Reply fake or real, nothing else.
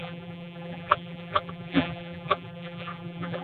fake